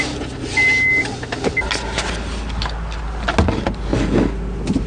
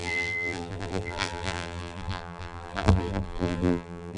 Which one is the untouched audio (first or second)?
first